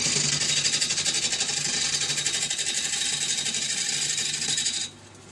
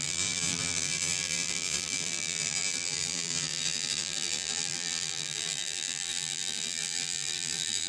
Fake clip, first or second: second